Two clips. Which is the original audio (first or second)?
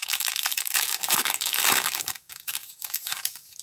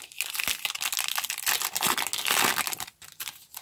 second